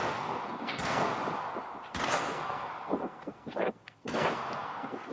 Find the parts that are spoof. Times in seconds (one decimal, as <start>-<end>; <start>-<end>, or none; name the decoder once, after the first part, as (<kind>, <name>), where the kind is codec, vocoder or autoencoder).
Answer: 0.0-1.1 (codec, SNAC); 1.9-5.1